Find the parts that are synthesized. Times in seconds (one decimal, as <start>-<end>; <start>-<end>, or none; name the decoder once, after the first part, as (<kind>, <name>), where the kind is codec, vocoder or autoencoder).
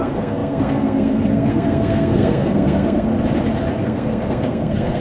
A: 0.0-3.1 (codec, SNAC); 3.8-5.0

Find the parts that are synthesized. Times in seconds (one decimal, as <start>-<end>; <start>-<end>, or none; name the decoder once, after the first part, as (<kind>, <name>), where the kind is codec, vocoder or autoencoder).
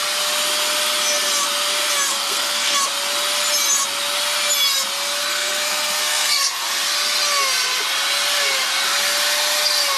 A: 2.1-2.8 (codec, SNAC); 5.2-6.6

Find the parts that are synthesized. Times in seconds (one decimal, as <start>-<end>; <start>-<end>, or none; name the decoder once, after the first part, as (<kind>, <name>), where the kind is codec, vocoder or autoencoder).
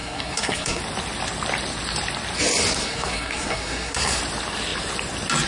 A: 0.0-0.8 (codec, SNAC); 2.8-4.2